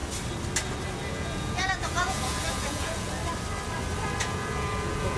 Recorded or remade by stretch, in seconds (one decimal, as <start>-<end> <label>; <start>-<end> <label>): 0.0-1.1 recorded; 1.1-3.2 remade; 3.2-4.2 recorded; 4.2-5.2 remade